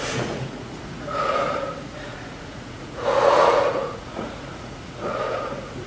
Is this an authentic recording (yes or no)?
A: no